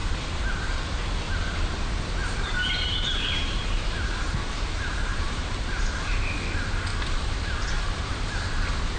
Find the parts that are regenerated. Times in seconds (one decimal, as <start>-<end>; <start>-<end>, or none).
0.0-0.8; 2.2-4.1; 5.1-6.2; 6.9-8.1

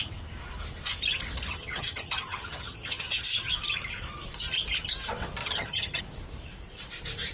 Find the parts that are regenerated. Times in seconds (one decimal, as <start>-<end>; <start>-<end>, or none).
1.5-3.5; 5.4-6.0

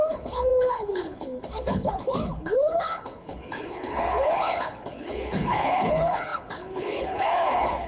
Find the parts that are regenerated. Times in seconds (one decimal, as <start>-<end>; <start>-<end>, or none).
0.0-7.9

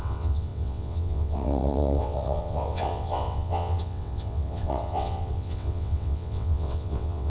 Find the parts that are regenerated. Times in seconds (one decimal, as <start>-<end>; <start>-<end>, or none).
0.0-7.3